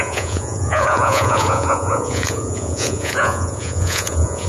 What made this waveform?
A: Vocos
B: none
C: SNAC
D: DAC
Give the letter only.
A